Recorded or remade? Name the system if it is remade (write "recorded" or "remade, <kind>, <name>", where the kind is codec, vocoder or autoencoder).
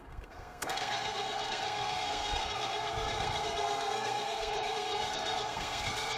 remade, codec, SNAC